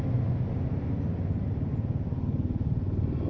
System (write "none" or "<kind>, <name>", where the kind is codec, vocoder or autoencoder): none